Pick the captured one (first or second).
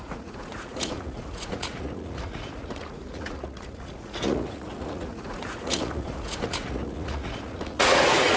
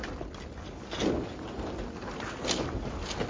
second